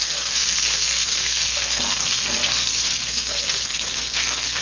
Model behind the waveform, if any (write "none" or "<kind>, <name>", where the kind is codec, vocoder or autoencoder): codec, SNAC